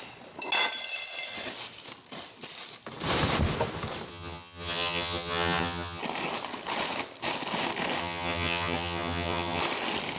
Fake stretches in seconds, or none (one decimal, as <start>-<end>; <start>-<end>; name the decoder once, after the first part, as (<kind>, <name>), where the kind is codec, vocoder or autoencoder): 4.1-6.0 (vocoder, HiFi-GAN); 8.0-9.6